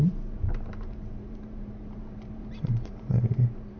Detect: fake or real fake